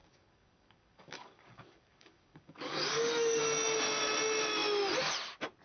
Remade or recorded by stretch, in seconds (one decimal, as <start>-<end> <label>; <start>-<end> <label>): 0.0-3.4 remade; 3.4-5.6 recorded